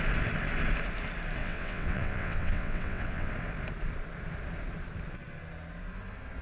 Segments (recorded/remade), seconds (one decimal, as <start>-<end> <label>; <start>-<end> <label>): 0.0-1.4 recorded; 1.4-3.3 remade; 3.3-6.4 recorded